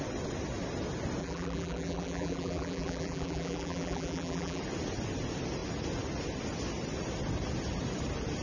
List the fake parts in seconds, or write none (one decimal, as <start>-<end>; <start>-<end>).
1.2-4.6